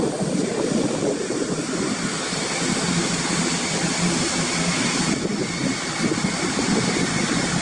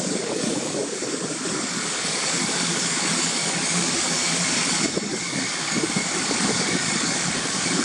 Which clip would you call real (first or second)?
first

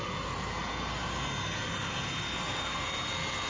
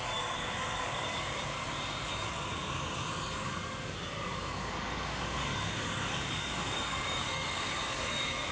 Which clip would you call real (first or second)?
first